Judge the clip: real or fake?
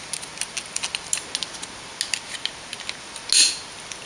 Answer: real